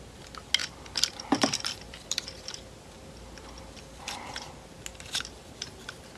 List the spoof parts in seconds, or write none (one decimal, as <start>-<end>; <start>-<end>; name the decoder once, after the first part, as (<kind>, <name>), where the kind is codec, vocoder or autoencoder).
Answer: 0.6-4.3 (vocoder, BigVGAN v2)